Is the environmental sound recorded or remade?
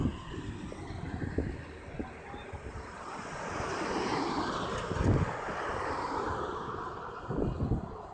recorded